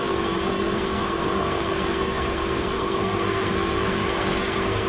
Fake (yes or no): yes